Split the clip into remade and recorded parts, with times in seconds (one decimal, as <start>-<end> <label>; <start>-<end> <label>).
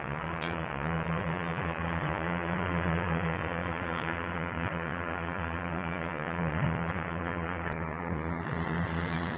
0.0-9.4 remade